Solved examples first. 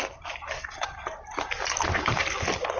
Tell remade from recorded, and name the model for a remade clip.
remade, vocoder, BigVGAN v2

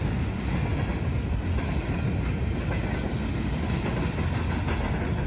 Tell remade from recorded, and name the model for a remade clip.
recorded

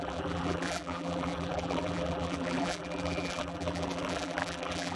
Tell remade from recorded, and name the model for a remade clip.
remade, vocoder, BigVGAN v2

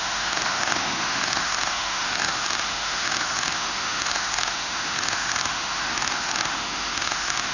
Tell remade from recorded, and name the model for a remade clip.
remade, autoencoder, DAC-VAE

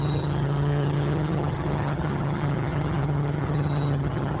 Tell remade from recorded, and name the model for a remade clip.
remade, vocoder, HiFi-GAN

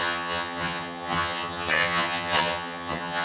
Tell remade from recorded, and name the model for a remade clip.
remade, vocoder, HiFi-GAN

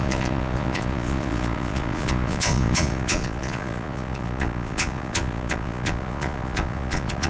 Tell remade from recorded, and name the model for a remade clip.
remade, vocoder, Vocos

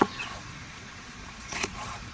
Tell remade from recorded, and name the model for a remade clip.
remade, vocoder, Vocos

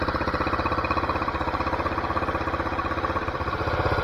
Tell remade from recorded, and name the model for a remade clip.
recorded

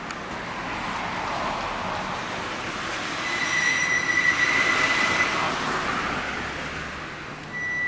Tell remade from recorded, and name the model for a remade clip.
recorded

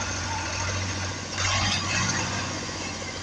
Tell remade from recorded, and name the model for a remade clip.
remade, vocoder, Vocos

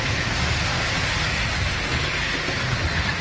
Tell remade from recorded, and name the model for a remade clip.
recorded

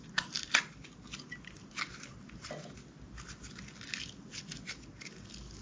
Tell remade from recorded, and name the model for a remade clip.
recorded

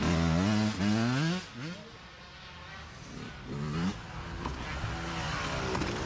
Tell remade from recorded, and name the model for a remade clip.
recorded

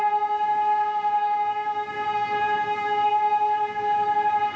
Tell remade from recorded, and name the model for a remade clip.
remade, codec, DAC